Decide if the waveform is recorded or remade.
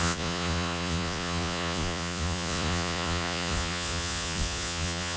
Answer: remade